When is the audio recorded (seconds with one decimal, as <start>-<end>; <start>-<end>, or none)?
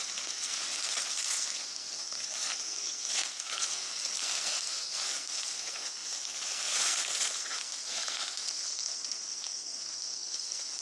none